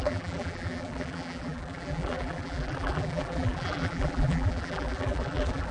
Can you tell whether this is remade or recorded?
remade